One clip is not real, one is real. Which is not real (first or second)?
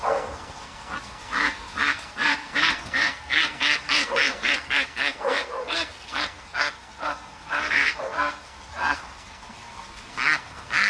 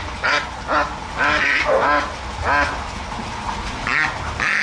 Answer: first